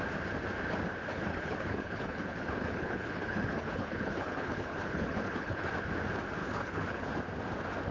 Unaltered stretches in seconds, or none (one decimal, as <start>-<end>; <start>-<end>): 0.0-1.1; 5.7-6.4; 7.1-7.9